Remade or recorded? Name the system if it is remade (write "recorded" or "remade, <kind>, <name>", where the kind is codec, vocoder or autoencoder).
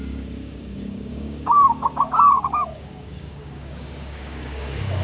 remade, codec, DAC